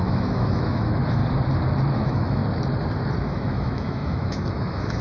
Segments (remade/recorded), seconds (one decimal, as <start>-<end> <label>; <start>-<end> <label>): 0.0-1.2 remade; 1.2-1.9 recorded; 1.9-2.4 remade; 2.4-3.3 recorded; 3.3-5.0 remade